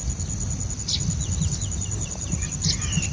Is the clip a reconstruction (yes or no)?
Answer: no